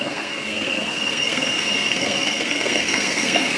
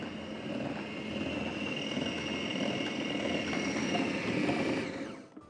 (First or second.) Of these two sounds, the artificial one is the first